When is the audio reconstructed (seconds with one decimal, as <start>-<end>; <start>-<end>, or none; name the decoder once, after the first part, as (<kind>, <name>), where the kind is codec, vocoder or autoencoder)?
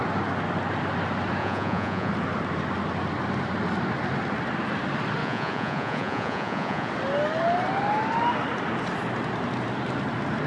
1.4-2.1 (vocoder, Vocos); 5.2-6.9